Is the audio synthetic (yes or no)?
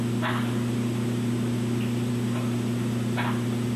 no